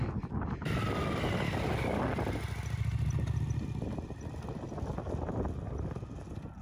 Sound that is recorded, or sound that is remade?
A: recorded